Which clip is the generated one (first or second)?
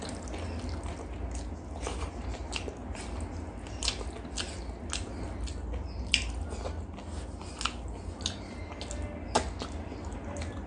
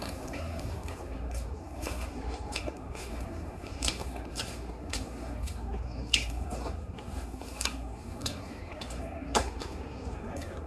second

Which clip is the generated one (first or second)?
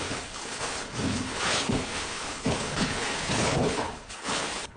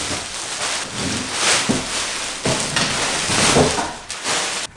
first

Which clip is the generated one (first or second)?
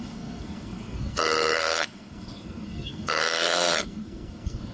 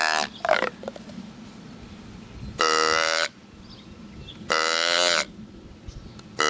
first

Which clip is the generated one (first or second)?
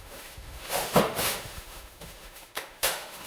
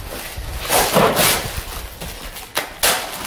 first